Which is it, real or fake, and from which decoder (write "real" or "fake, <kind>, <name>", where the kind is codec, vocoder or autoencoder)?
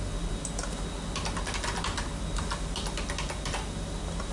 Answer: real